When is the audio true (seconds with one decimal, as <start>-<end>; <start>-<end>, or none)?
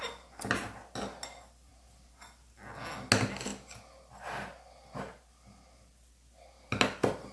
0.0-7.3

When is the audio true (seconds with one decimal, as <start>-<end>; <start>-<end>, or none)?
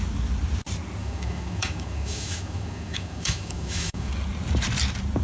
0.0-1.0; 4.1-5.2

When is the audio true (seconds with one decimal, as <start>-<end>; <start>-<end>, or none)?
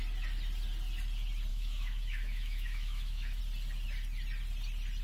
0.0-1.5; 3.4-5.0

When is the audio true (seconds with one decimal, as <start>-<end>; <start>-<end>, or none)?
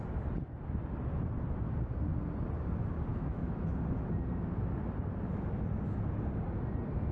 0.0-3.1; 3.7-7.1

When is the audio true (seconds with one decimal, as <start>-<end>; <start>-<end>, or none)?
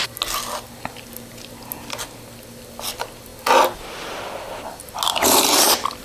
0.0-6.0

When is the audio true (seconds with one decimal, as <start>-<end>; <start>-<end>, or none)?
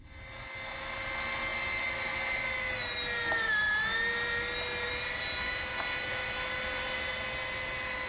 0.0-8.1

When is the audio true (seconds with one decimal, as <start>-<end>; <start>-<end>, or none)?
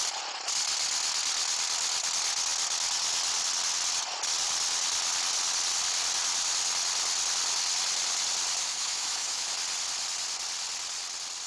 0.0-8.6; 9.5-11.5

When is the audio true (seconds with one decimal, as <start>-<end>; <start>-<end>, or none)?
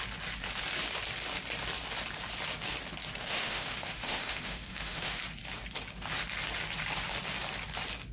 0.0-3.2; 5.2-8.1